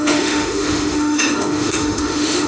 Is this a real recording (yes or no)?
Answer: no